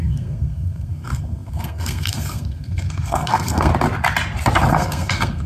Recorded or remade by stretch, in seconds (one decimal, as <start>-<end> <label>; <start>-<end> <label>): 0.0-3.7 remade; 3.7-4.7 recorded; 4.7-5.5 remade